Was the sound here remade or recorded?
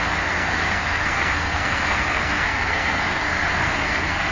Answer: remade